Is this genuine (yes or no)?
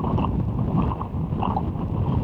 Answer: yes